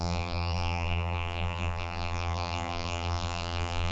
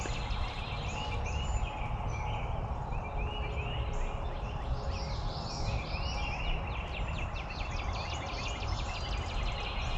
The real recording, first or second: second